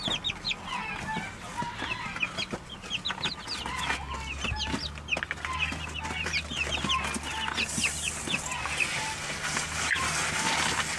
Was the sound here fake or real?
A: real